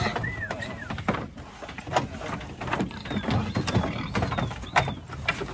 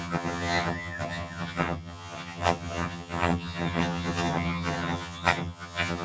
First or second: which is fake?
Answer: second